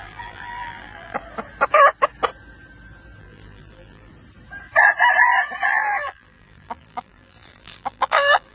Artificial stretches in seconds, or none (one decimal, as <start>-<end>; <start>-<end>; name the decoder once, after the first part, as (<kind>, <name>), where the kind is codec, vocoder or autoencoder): 0.0-1.2 (vocoder, BigVGAN v2); 3.2-4.1; 5.7-8.5